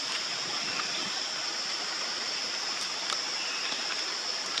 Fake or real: real